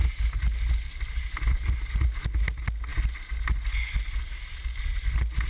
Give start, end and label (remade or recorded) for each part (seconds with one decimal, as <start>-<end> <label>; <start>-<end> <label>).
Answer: 0.0-5.5 recorded